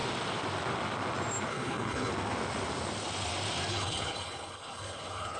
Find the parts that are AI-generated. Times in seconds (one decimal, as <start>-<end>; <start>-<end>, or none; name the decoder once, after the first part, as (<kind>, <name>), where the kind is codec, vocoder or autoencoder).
1.5-2.1 (codec, HILCodec); 3.7-5.4

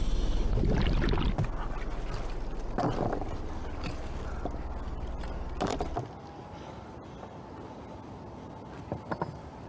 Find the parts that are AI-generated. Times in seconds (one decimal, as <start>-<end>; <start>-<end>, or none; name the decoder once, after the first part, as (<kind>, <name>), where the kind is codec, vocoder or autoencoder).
none